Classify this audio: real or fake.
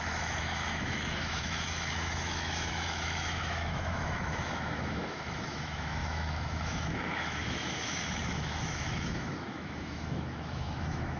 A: fake